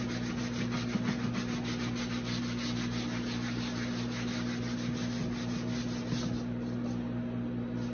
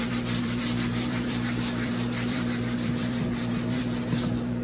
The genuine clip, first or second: first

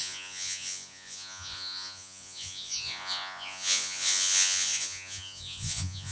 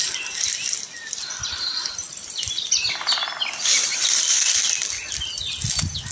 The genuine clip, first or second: second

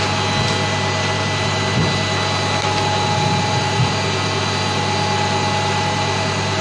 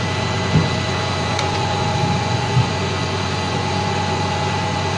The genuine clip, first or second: first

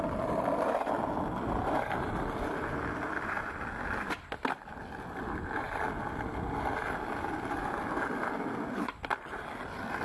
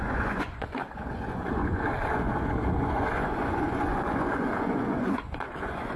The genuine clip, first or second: first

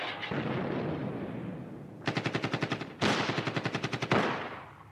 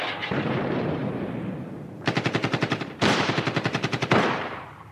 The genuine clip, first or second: first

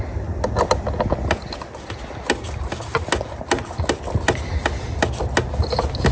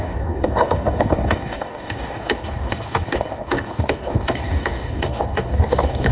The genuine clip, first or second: first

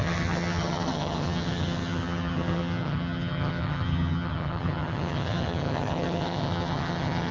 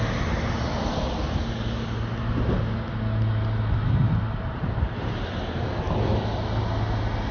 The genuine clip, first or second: second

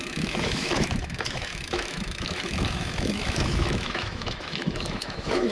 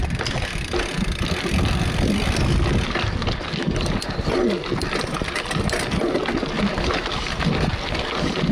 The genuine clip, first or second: second